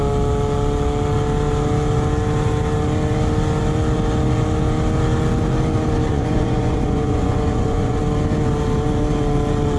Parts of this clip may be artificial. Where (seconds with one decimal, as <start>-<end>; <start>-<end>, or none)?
6.1-8.0